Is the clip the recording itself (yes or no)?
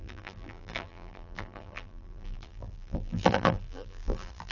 no